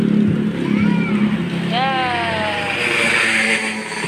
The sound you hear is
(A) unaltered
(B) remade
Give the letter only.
A